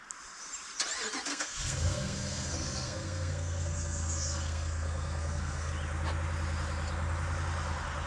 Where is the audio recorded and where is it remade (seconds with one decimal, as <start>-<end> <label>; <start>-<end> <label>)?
0.0-1.3 recorded; 1.3-5.7 remade; 5.7-8.1 recorded